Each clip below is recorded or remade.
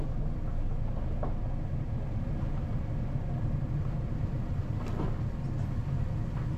recorded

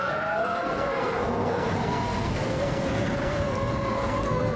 remade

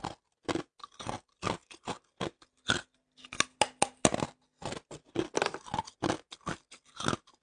recorded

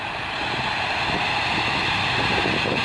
recorded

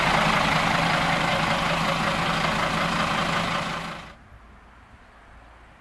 recorded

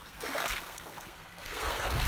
remade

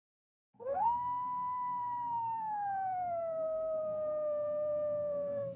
remade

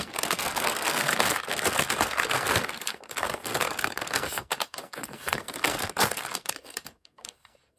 remade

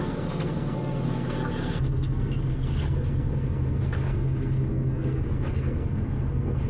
remade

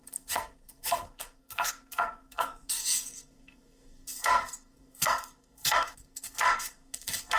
remade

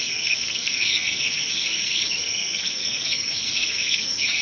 remade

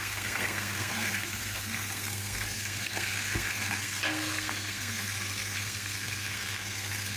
remade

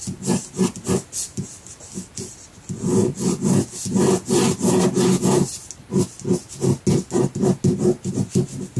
recorded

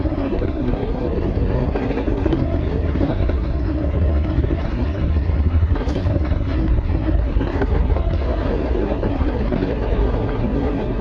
remade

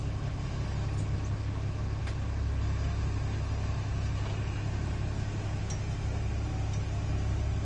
recorded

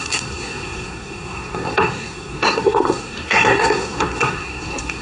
remade